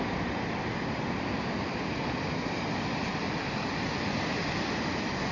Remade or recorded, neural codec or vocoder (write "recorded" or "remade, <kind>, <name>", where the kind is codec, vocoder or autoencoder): recorded